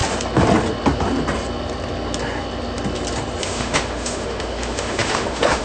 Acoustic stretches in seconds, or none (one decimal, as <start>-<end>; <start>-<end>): 0.0-3.4